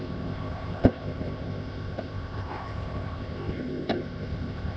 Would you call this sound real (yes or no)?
no